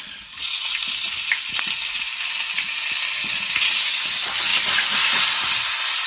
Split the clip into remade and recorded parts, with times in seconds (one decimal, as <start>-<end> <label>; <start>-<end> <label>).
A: 0.0-6.1 recorded